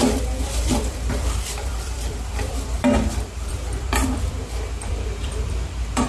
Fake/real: fake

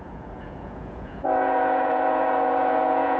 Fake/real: fake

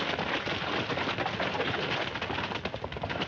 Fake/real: real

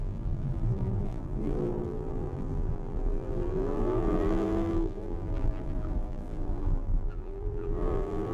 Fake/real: fake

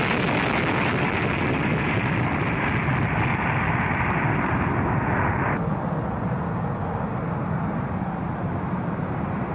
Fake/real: real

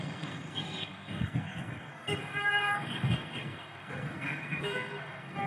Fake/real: fake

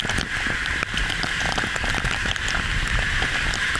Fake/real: real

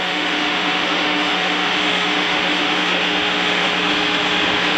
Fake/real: fake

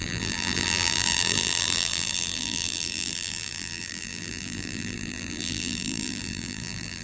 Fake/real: fake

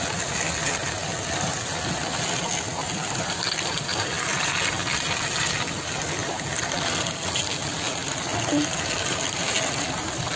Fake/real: real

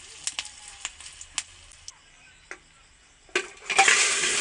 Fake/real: real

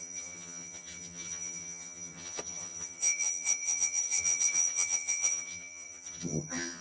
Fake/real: fake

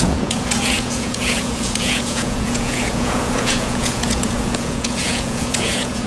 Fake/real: fake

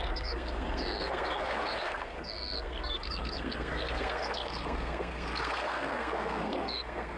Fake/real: fake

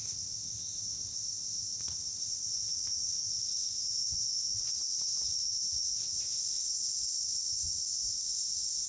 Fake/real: fake